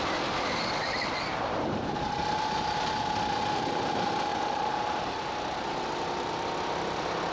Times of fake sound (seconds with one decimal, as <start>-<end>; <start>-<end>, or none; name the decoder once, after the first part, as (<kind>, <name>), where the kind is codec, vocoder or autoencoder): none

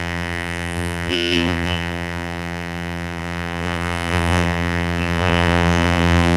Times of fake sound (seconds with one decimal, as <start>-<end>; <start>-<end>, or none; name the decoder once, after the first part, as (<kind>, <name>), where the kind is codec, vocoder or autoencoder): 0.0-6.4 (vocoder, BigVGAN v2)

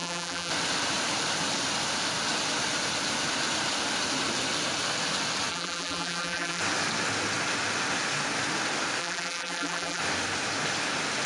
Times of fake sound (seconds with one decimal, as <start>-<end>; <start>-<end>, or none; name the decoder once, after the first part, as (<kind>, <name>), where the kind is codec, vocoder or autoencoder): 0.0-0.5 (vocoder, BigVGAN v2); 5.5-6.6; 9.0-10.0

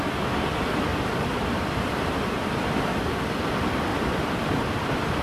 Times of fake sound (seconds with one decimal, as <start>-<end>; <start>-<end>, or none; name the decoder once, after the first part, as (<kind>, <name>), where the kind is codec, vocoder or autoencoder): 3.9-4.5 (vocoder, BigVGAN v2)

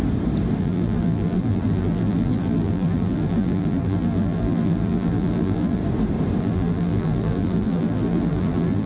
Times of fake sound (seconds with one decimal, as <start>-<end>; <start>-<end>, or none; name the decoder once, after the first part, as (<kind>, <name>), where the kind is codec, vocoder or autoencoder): 0.6-5.8 (vocoder, BigVGAN v2); 6.4-8.9